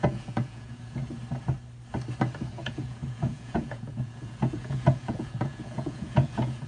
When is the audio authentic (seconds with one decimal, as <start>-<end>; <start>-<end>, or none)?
1.0-2.5